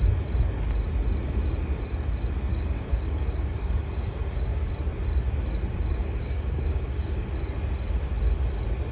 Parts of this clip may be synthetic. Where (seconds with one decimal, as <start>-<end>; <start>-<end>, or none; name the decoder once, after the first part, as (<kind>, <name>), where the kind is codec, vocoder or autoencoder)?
2.5-4.7 (codec, DAC); 5.9-7.3